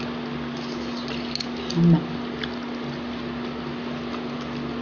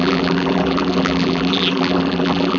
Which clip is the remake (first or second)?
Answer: second